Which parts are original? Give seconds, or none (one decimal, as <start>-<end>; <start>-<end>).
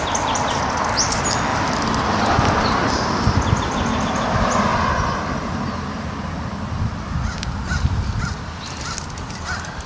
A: 0.0-9.9